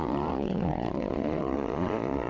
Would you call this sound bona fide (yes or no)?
no